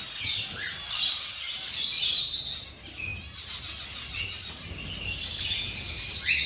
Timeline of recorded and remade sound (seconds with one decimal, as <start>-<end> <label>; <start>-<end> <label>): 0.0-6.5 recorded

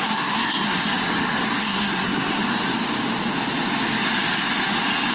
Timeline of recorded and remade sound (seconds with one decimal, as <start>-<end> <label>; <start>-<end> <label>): 0.0-0.9 remade; 0.9-1.6 recorded; 1.6-2.4 remade; 2.4-5.1 recorded

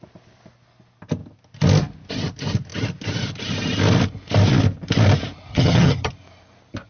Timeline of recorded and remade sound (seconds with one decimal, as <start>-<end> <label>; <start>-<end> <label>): 0.0-5.5 recorded; 5.5-6.1 remade; 6.1-6.9 recorded

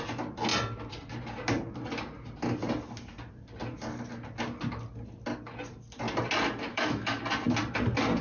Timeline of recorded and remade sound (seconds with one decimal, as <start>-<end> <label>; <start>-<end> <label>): 0.0-6.7 recorded; 6.7-7.2 remade; 7.2-8.2 recorded